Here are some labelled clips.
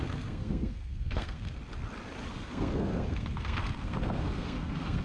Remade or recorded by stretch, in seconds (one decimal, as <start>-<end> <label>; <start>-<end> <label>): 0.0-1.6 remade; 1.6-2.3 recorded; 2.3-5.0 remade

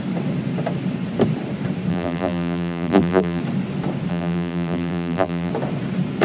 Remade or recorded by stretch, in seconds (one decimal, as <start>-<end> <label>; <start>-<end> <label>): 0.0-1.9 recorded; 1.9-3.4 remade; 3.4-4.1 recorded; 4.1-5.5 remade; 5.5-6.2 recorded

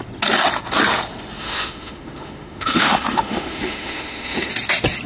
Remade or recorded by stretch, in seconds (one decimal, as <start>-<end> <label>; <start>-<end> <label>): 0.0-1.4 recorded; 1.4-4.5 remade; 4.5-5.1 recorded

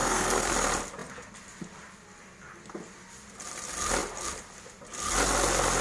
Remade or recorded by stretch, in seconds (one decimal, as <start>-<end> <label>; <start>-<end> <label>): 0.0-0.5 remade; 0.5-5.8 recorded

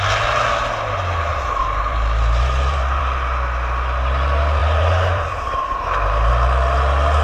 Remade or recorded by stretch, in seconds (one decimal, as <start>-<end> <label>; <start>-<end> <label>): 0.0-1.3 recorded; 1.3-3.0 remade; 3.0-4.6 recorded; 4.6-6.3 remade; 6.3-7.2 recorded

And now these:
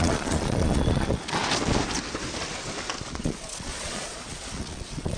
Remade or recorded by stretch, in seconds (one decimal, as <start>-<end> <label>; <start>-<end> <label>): 0.0-1.4 remade; 1.4-3.2 recorded; 3.2-5.2 remade

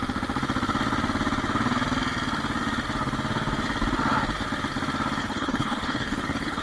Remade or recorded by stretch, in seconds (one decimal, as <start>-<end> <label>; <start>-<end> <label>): 0.0-5.2 recorded; 5.2-6.6 remade